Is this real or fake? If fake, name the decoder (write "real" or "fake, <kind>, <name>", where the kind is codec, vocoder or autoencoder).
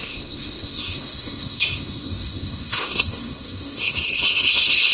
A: fake, codec, SNAC